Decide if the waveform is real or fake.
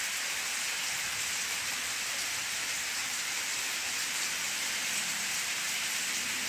fake